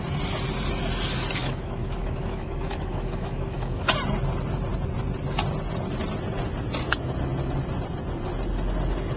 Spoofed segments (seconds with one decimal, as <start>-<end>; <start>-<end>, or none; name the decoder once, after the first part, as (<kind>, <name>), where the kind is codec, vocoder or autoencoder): 1.4-3.9 (autoencoder, DAC-VAE)